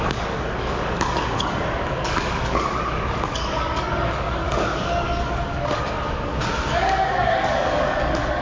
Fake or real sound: fake